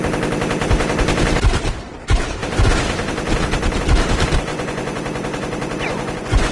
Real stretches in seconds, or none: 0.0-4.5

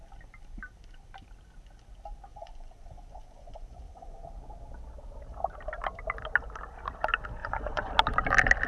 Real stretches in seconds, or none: 0.0-2.3; 4.2-7.4; 7.9-8.7